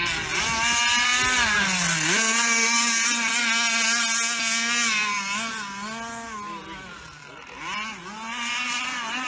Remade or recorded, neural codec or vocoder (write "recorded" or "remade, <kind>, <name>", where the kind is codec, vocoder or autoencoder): recorded